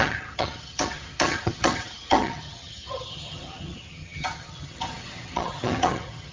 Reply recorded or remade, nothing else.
remade